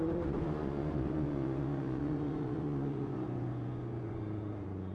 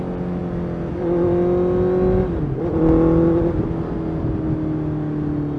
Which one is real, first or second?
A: second